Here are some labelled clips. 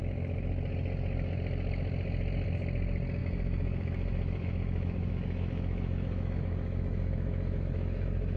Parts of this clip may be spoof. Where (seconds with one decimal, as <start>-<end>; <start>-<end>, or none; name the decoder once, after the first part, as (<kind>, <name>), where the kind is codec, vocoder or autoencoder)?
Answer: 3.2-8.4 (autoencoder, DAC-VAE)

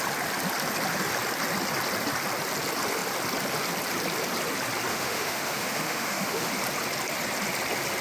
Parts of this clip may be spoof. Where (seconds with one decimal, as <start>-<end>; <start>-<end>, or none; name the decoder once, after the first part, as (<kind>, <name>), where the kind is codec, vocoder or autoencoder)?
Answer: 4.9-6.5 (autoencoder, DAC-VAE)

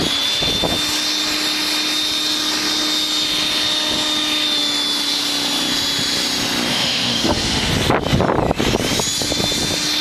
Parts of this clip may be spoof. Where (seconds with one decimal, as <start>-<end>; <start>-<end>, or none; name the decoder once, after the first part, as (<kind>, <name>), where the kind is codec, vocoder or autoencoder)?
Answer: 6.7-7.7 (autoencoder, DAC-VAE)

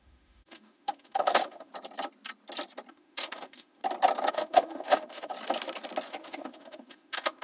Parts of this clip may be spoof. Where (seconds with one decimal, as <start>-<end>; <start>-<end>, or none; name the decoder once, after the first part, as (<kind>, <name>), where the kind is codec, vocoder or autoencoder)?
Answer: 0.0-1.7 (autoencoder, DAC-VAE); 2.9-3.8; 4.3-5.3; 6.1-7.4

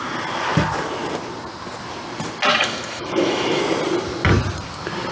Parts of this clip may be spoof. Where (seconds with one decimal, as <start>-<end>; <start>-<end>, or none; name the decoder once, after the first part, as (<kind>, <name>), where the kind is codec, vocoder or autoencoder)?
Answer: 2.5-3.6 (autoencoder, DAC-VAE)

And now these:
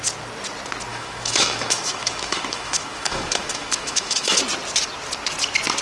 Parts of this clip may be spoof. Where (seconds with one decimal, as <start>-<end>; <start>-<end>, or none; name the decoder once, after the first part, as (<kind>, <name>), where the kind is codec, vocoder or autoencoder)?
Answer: 0.9-4.4 (autoencoder, DAC-VAE)

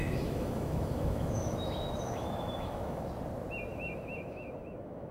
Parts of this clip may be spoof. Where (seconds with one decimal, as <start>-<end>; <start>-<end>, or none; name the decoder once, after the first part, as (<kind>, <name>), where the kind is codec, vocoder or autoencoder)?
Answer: 0.0-3.1 (autoencoder, DAC-VAE); 3.7-5.1

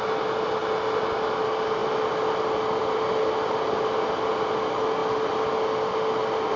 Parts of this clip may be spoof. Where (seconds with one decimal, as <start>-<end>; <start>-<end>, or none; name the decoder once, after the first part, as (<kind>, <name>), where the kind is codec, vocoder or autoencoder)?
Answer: none